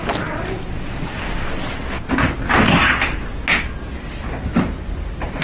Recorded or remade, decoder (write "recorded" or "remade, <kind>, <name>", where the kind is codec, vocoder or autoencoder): recorded